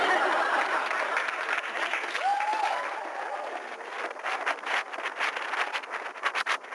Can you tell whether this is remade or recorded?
recorded